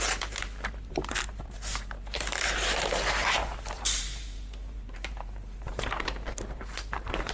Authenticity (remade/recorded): remade